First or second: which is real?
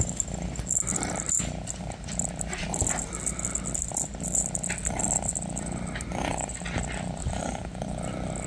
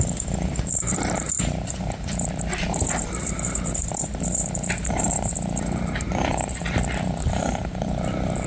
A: first